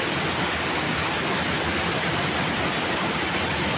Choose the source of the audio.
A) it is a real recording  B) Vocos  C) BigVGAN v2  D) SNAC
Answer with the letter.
A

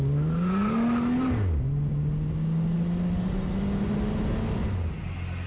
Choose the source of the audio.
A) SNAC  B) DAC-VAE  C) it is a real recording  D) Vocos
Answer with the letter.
C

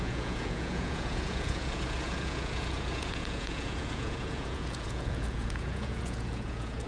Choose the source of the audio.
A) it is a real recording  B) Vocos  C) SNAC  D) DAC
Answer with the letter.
B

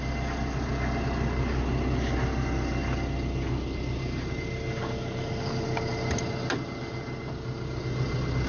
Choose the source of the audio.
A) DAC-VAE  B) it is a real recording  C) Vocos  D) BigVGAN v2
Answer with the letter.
B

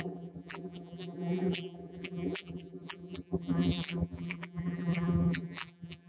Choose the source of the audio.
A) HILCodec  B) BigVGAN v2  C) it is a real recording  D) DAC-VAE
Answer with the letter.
B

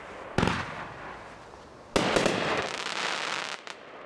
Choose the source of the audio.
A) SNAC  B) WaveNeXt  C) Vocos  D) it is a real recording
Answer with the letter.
D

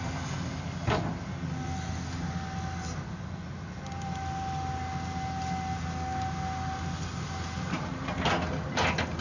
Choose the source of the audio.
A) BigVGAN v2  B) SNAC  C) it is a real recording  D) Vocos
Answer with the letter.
C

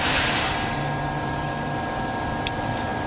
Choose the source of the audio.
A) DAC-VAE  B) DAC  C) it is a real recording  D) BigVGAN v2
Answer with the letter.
C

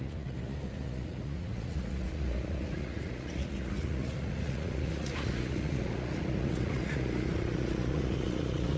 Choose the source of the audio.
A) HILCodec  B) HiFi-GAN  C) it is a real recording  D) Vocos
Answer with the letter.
D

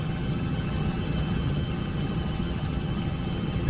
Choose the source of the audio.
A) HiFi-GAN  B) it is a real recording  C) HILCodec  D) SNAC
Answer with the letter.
A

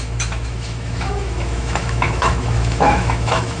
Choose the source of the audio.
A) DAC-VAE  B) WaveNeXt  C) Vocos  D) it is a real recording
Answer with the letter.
A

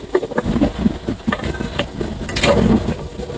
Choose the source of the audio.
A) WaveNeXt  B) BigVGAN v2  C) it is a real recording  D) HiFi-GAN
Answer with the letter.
C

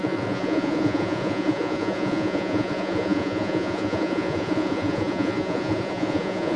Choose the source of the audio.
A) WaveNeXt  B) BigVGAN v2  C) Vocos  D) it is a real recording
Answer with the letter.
C